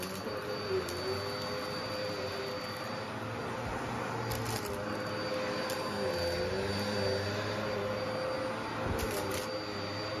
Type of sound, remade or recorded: recorded